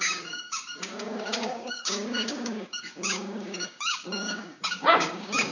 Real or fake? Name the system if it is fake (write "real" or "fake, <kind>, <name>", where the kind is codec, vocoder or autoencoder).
fake, codec, DAC